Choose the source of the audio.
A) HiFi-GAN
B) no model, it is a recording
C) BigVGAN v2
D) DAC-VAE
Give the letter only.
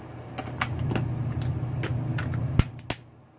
B